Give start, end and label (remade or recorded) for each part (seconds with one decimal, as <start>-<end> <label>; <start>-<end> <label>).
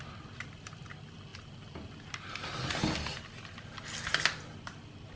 0.0-5.2 recorded